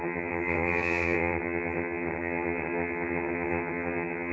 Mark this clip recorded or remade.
remade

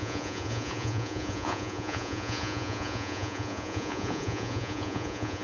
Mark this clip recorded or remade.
remade